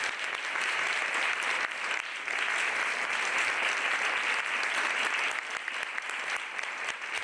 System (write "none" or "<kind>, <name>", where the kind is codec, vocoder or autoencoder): none